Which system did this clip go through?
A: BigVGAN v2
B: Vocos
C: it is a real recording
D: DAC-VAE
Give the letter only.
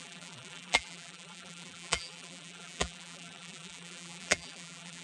A